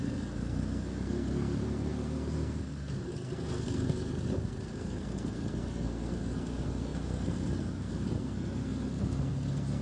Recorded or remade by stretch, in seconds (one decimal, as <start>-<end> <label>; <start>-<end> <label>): 0.0-9.8 remade